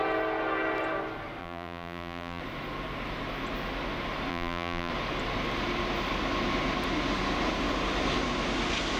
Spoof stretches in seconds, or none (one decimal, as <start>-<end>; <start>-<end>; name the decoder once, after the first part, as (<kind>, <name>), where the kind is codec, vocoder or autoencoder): 1.4-2.4 (vocoder, BigVGAN v2); 4.3-4.9